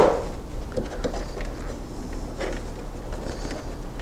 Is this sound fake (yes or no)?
no